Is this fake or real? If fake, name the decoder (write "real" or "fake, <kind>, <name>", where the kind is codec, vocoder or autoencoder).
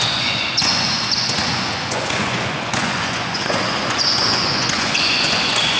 fake, vocoder, Vocos